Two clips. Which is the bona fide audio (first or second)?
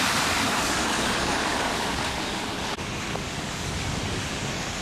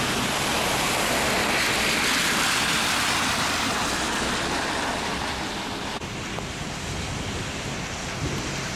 second